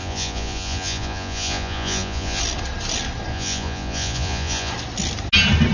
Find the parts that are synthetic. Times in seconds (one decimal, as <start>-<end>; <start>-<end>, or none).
0.0-2.4; 3.3-4.7